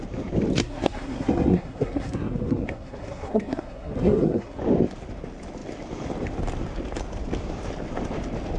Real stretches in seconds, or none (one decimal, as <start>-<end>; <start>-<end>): 0.0-0.6; 4.6-8.6